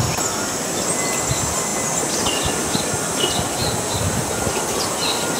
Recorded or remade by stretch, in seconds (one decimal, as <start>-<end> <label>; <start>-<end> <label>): 0.0-5.4 recorded